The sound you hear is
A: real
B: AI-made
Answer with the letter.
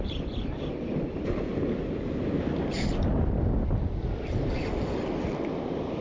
A